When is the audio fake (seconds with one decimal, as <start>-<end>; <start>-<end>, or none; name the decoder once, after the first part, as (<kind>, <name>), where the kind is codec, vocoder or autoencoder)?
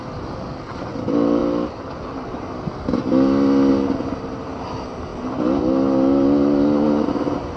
none